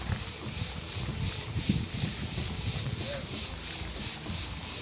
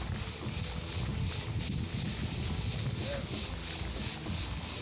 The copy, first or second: first